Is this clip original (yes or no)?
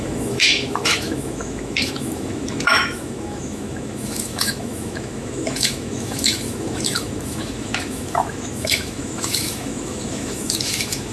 no